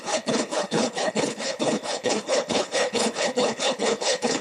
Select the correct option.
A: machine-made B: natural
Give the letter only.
A